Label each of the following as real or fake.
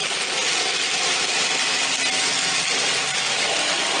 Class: real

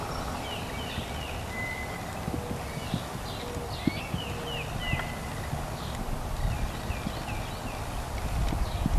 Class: real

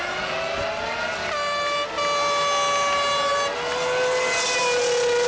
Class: real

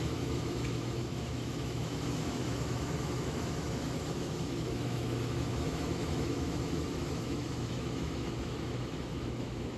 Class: fake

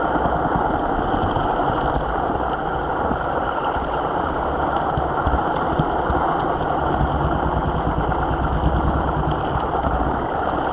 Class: real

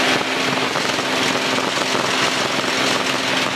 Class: real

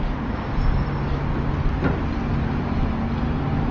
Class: real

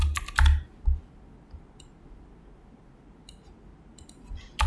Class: real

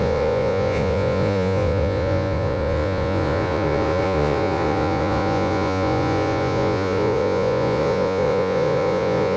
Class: fake